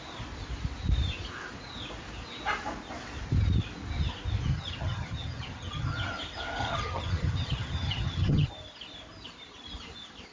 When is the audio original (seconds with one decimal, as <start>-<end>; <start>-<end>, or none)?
0.0-4.5; 6.1-6.6; 8.5-10.3